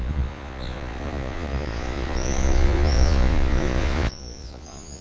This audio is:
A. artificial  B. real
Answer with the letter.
A